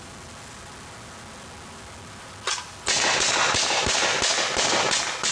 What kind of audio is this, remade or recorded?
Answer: recorded